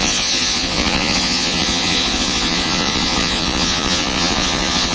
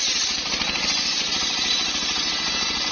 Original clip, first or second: second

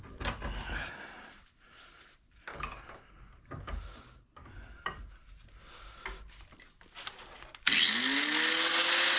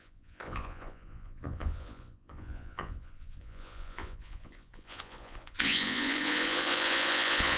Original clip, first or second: first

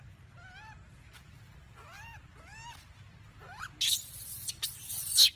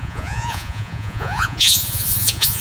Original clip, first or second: first